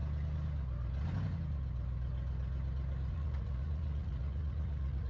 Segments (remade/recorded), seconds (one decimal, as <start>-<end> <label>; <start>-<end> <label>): 0.0-3.1 recorded; 3.1-5.1 remade